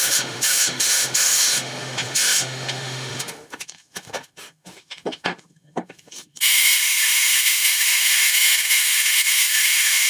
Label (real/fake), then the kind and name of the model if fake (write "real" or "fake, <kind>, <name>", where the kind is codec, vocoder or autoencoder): fake, autoencoder, DAC-VAE